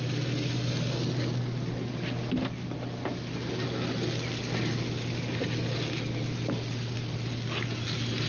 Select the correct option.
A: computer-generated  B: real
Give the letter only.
B